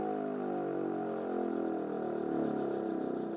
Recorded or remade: recorded